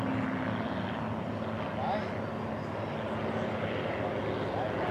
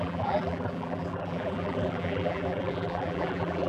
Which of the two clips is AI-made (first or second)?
second